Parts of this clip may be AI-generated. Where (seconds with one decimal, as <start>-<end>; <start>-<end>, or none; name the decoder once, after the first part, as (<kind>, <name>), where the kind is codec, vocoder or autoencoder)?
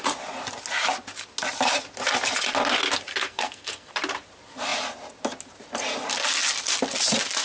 3.1-3.9 (codec, SNAC)